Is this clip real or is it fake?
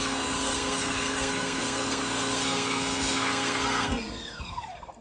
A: fake